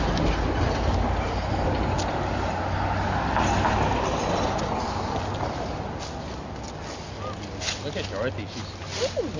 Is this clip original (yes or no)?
yes